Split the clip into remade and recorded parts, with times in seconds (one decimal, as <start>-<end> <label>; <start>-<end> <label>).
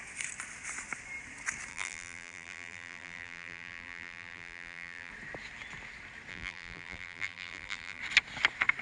0.0-1.7 recorded; 1.7-5.1 remade; 5.1-6.3 recorded; 6.3-8.0 remade; 8.0-8.8 recorded